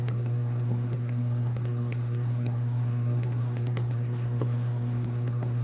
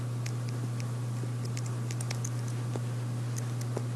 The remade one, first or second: first